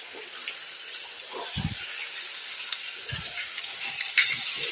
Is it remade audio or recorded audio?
recorded